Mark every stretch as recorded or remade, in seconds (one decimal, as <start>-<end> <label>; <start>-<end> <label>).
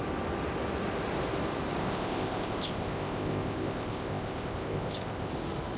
0.0-1.8 recorded; 1.8-5.3 remade; 5.3-5.8 recorded